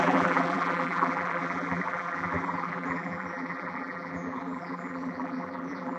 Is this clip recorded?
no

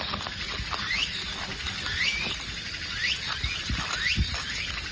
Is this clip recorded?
no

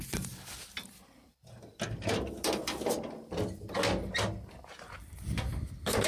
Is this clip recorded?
yes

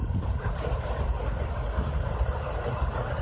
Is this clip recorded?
no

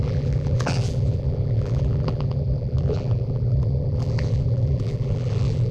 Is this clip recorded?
no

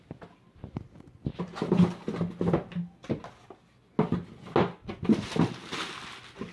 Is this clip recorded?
yes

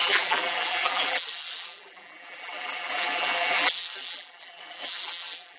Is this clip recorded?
no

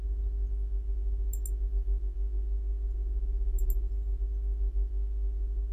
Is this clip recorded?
yes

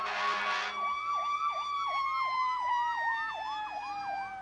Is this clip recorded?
yes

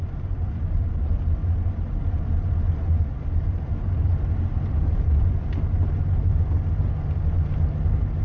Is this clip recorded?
yes